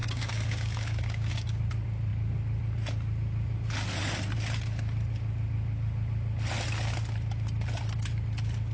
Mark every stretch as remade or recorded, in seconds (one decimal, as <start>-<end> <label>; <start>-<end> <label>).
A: 0.0-1.6 remade; 1.6-8.7 recorded